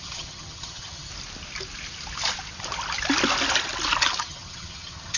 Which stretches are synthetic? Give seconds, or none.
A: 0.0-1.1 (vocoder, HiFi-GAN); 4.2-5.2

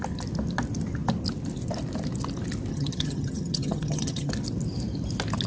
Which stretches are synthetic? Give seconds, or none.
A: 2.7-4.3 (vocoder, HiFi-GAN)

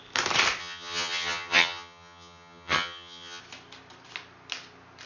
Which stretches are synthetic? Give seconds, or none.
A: 0.6-3.4 (vocoder, HiFi-GAN)

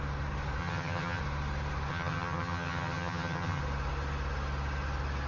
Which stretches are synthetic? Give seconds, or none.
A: 0.6-1.2 (vocoder, HiFi-GAN); 1.9-3.6